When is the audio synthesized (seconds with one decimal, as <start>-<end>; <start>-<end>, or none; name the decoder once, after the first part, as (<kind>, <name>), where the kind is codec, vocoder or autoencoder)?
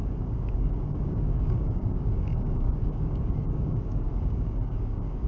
0.0-5.3 (codec, DAC)